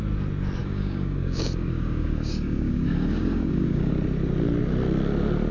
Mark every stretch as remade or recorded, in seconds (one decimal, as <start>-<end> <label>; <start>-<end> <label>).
0.0-0.6 recorded; 0.6-3.9 remade; 3.9-5.5 recorded